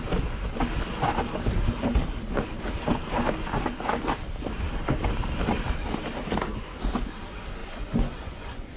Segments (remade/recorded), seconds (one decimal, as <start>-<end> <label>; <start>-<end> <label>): 0.0-7.6 recorded; 7.6-8.8 remade